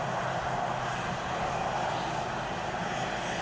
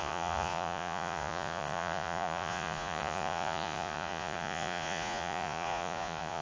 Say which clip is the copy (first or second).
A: second